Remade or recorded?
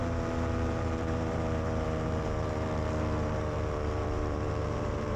remade